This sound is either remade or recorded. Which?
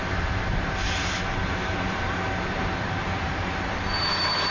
remade